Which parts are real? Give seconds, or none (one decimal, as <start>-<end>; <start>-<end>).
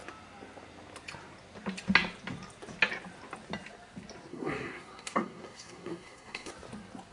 0.0-4.3; 6.5-7.1